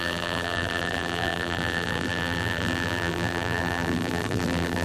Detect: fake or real fake